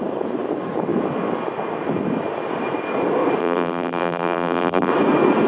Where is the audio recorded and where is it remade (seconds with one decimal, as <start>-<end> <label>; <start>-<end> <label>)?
0.0-3.4 recorded; 3.4-4.9 remade; 4.9-5.5 recorded